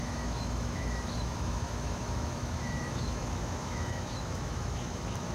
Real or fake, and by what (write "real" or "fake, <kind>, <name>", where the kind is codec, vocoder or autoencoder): fake, autoencoder, DAC-VAE